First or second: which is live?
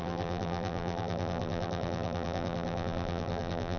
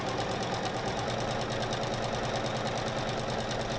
second